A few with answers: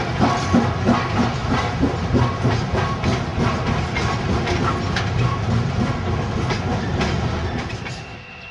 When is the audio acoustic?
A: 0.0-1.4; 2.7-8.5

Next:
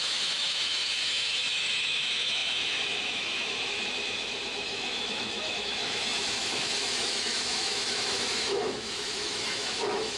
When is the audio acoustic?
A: none

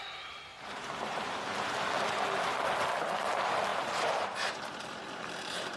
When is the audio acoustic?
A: 0.0-0.5; 1.8-3.7

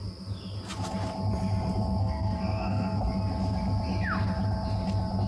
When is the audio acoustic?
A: 0.0-2.0; 3.0-5.3

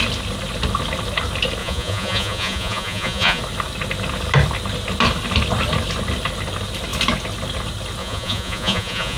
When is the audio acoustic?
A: 0.0-1.6; 3.4-8.0

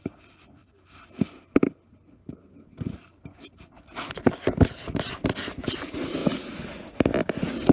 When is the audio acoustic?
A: 0.0-7.7

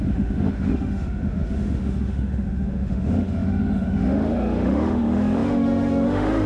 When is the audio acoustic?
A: none

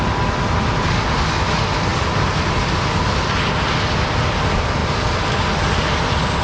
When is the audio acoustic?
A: 0.0-6.4